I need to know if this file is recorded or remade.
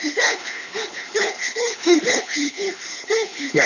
remade